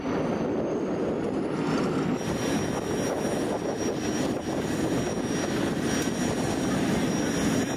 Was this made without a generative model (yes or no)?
yes